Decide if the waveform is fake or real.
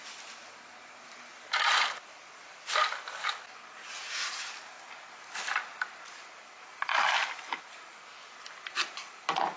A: real